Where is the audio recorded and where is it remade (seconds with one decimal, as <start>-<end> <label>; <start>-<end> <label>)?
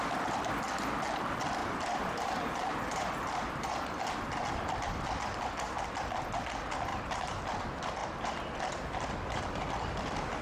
0.0-1.6 recorded; 1.6-4.0 remade; 4.0-6.9 recorded; 6.9-7.4 remade; 7.4-10.4 recorded